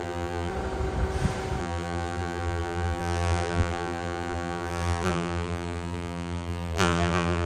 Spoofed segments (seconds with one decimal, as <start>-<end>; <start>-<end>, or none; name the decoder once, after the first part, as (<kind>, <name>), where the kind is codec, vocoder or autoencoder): 0.0-0.5 (vocoder, BigVGAN v2); 1.6-7.5